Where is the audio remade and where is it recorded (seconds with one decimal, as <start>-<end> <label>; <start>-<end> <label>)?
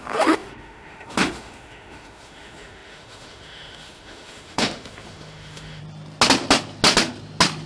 0.0-5.8 remade; 5.8-7.7 recorded